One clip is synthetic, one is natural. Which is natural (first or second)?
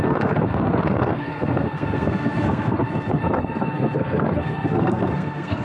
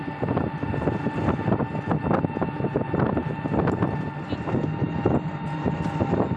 second